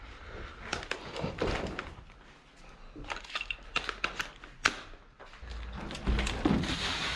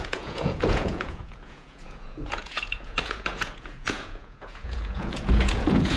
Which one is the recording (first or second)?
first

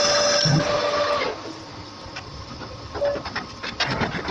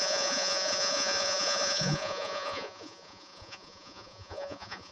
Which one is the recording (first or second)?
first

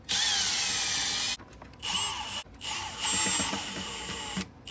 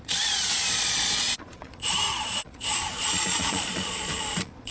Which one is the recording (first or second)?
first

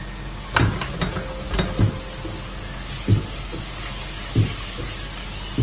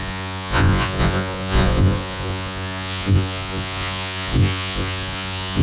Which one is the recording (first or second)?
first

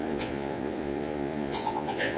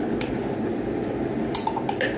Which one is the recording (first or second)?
second